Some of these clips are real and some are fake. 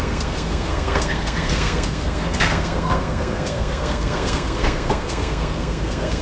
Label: fake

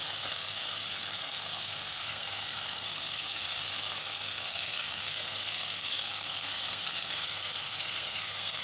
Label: fake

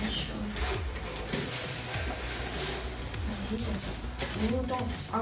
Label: real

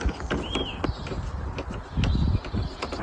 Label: real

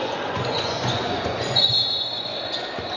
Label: fake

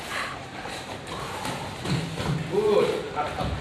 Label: real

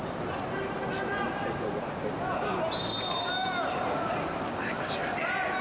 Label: real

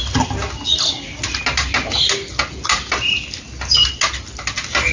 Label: real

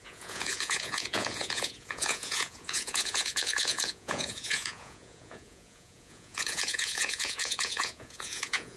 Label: fake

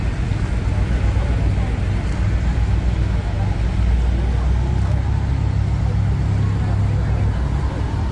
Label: real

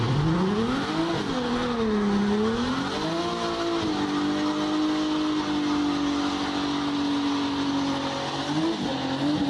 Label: real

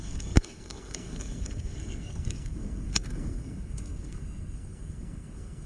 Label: fake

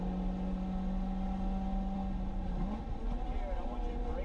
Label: real